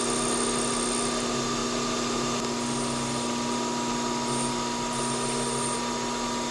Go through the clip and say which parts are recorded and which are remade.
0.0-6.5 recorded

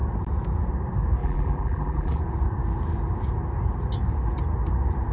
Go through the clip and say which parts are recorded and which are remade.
0.0-1.2 recorded; 1.2-2.2 remade; 2.2-5.1 recorded

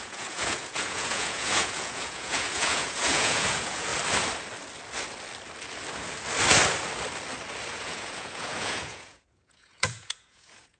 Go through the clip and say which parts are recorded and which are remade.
0.0-3.9 remade; 3.9-7.7 recorded; 7.7-10.8 remade

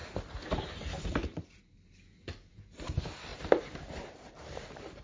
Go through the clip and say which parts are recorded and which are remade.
0.0-5.0 remade

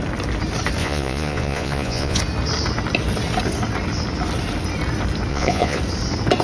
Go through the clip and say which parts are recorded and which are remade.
0.0-0.8 recorded; 0.8-2.2 remade; 2.2-5.3 recorded; 5.3-5.8 remade; 5.8-6.4 recorded

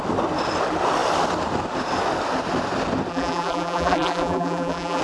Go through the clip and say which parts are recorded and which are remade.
0.0-3.1 recorded; 3.1-5.0 remade

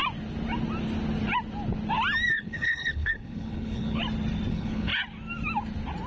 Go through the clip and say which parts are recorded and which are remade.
0.0-2.3 recorded; 2.3-4.0 remade; 4.0-4.5 recorded; 4.5-4.9 remade; 4.9-6.1 recorded

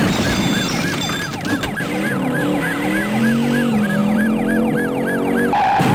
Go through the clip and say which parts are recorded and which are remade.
0.0-4.0 recorded; 4.0-4.6 remade; 4.6-5.9 recorded